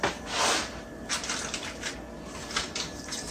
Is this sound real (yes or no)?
yes